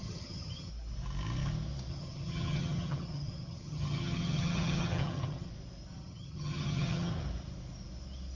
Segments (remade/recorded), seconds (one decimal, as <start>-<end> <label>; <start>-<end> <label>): 0.0-0.7 remade; 0.7-1.9 recorded; 1.9-5.5 remade; 5.5-5.9 recorded; 5.9-7.1 remade; 7.1-8.4 recorded